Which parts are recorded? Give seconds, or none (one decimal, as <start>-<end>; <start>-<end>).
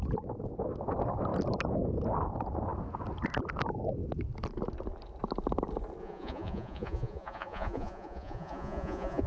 0.0-6.0